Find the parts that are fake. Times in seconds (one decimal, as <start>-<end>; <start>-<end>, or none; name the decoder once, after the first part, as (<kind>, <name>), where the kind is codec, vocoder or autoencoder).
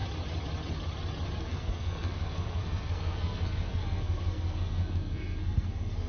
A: 1.4-6.1 (codec, SNAC)